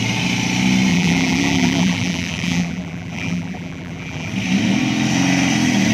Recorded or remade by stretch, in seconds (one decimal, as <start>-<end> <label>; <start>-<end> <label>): 0.0-0.9 recorded; 0.9-4.3 remade; 4.3-5.9 recorded